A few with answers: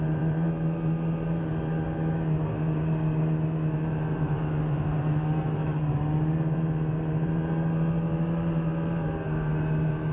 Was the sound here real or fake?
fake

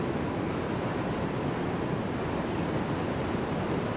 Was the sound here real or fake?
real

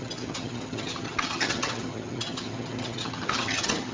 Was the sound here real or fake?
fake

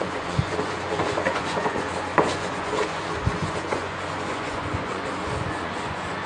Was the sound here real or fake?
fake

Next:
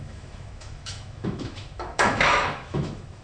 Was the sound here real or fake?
fake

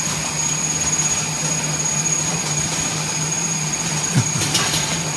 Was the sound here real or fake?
real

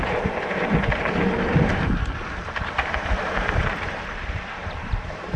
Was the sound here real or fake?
fake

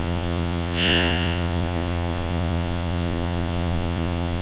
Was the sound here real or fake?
fake